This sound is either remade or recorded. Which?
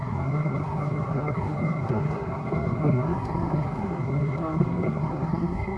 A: remade